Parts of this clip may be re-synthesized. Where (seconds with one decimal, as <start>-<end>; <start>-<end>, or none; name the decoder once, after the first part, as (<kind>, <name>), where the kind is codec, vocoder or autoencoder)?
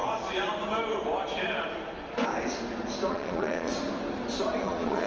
3.1-3.7 (vocoder, Vocos); 4.6-5.1